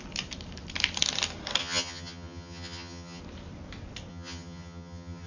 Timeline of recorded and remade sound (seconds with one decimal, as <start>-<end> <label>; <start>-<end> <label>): 0.0-1.6 recorded; 1.6-3.2 remade; 3.2-4.1 recorded; 4.1-5.3 remade